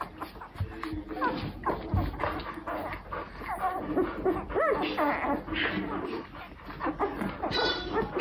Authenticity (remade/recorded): recorded